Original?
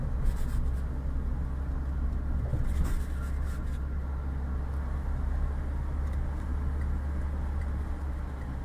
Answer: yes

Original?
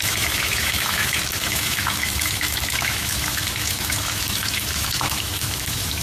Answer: no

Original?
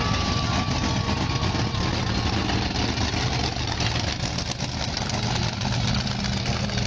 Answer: yes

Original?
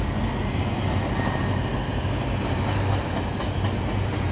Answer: yes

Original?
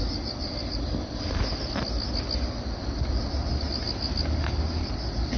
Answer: yes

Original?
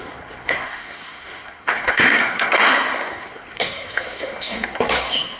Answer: no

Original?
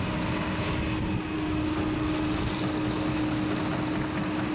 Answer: yes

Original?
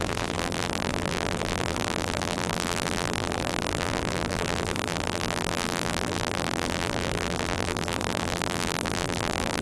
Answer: no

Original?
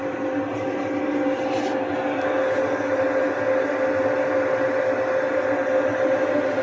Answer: yes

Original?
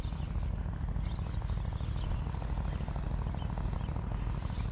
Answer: yes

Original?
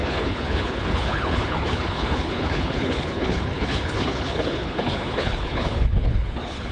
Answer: no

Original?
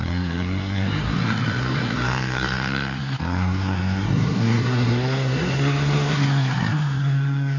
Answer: no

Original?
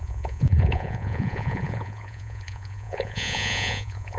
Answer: no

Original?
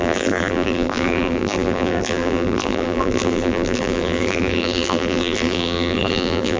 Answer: no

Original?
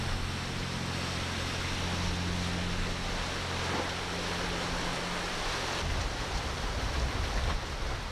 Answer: yes